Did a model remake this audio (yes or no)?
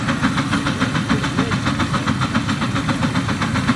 no